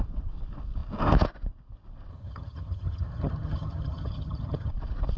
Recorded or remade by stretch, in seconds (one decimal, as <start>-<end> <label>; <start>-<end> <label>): 0.0-2.1 recorded; 2.1-4.7 remade; 4.7-5.2 recorded